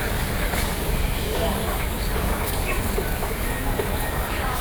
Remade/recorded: remade